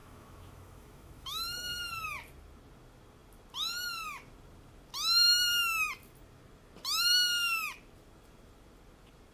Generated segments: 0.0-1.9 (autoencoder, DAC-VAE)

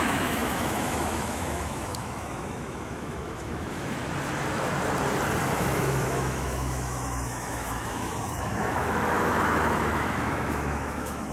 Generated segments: 0.0-4.0 (autoencoder, DAC-VAE); 5.6-11.3

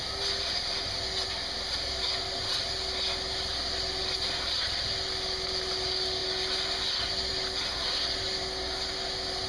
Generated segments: none